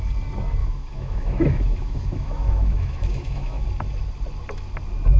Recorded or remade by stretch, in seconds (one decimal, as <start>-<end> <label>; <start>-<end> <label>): 0.0-0.6 recorded; 0.6-3.7 remade; 3.7-5.2 recorded